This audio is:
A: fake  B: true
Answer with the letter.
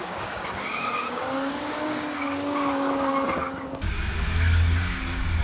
A